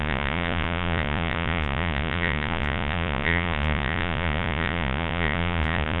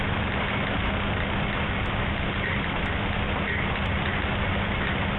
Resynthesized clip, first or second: first